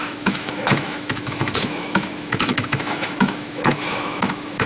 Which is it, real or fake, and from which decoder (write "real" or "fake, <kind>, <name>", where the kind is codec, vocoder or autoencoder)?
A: fake, autoencoder, DAC-VAE